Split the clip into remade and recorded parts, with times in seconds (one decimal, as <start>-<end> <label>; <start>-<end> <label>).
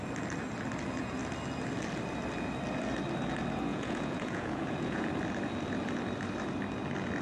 0.0-3.7 recorded; 3.7-5.1 remade; 5.1-7.2 recorded